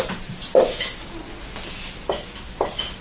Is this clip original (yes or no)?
yes